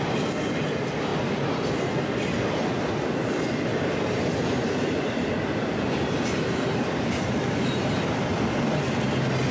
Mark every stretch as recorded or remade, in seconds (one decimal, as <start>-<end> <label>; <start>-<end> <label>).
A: 0.0-3.7 recorded; 3.7-7.9 remade; 7.9-9.5 recorded